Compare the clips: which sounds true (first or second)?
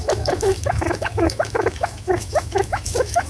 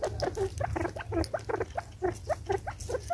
second